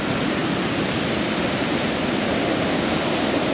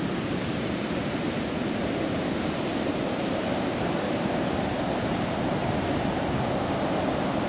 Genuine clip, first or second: first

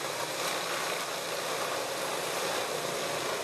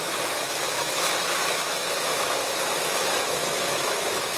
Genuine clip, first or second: first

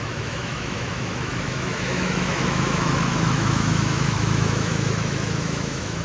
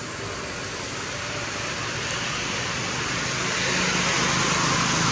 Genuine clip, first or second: second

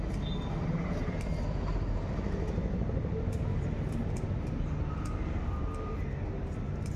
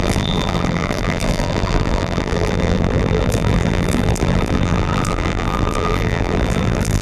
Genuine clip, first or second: first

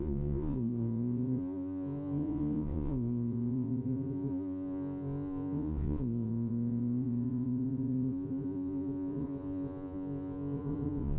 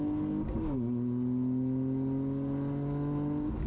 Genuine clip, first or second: second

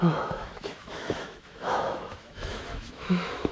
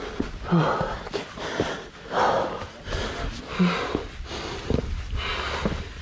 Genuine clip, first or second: second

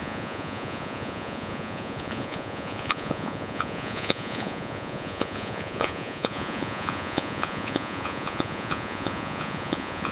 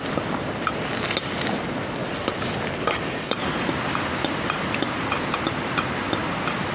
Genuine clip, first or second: second